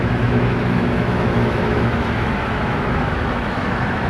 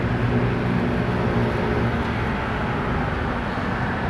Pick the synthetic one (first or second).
first